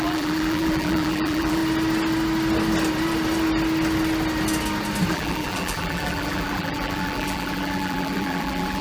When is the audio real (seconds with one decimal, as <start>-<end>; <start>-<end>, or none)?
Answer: 1.6-5.1